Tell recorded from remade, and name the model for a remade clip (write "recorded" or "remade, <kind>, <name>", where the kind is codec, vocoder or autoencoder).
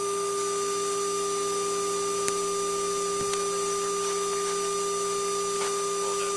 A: recorded